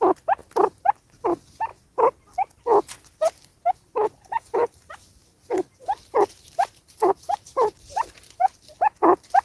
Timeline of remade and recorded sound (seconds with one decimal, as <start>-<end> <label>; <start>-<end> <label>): 0.0-3.5 recorded; 3.5-8.6 remade; 8.6-9.4 recorded